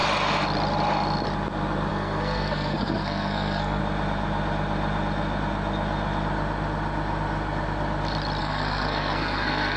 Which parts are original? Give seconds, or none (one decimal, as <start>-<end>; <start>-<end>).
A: 0.0-1.9; 3.8-8.4